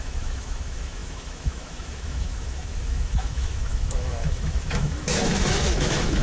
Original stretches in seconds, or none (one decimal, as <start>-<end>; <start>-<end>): none